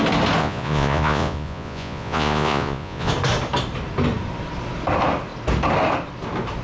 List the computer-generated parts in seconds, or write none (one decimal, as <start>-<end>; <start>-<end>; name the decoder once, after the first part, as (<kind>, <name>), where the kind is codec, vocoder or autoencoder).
0.4-3.1 (vocoder, Vocos)